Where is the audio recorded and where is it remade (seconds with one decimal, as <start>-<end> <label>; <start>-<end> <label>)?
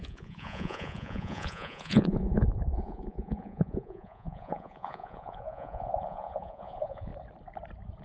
0.0-7.1 remade; 7.1-8.0 recorded